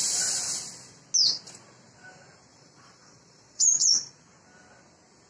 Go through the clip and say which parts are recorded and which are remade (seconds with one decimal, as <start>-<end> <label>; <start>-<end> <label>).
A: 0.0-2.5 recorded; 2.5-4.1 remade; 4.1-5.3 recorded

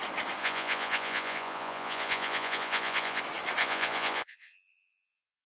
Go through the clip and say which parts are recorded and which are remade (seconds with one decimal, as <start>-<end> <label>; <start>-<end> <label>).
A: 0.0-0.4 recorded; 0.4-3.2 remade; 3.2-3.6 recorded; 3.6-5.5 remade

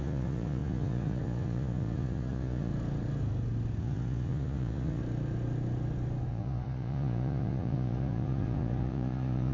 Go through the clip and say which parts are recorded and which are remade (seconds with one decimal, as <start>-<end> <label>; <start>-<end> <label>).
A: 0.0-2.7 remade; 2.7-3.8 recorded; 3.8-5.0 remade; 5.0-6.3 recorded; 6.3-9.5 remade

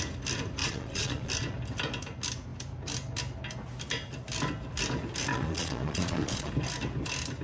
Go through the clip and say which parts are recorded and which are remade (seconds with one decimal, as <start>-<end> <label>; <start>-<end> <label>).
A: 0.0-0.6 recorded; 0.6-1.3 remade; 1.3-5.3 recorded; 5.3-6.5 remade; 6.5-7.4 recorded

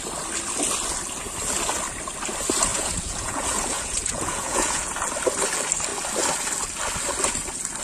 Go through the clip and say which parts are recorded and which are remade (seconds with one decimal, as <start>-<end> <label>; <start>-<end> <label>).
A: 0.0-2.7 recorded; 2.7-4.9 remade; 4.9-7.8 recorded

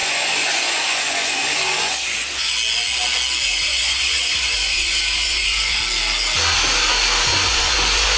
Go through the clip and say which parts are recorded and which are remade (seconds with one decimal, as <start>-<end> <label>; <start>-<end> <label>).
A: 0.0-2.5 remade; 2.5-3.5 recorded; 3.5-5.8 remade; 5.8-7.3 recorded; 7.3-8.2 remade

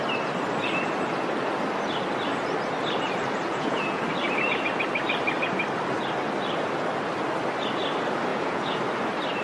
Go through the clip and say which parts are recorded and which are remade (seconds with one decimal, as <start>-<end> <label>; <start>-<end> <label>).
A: 0.0-3.5 recorded; 3.5-4.0 remade; 4.0-8.3 recorded; 8.3-8.8 remade; 8.8-9.4 recorded